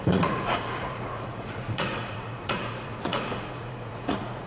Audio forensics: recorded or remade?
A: remade